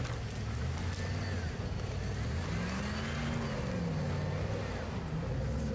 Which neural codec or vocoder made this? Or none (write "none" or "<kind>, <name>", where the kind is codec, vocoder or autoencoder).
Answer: none